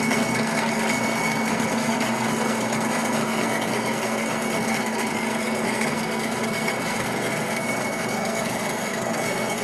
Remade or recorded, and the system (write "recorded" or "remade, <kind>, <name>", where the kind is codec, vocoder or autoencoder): remade, codec, SNAC